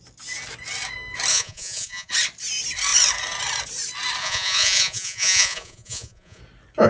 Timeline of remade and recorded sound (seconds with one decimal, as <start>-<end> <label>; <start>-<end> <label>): 0.0-1.3 recorded; 1.3-2.1 remade; 2.1-4.2 recorded; 4.2-6.4 remade; 6.4-6.9 recorded